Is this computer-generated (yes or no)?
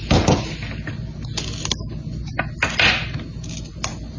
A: no